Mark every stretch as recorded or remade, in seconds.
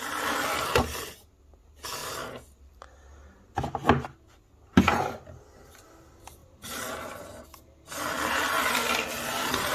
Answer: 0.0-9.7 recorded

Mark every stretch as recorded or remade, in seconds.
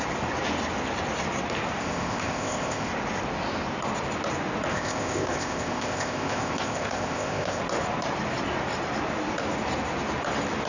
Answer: 0.0-1.8 recorded; 1.8-2.9 remade; 2.9-4.7 recorded; 4.7-7.6 remade; 7.6-10.7 recorded